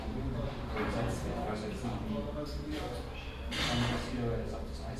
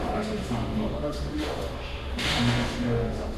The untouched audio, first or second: first